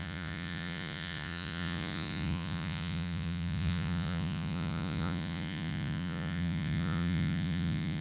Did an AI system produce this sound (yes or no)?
yes